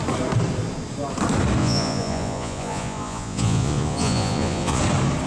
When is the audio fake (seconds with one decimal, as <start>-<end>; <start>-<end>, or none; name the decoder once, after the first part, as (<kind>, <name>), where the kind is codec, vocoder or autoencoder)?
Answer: 1.6-4.8 (vocoder, Vocos)